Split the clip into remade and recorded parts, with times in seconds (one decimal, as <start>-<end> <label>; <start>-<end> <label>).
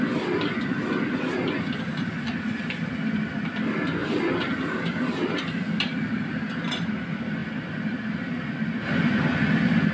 0.0-9.9 recorded